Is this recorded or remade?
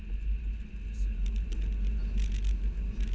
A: recorded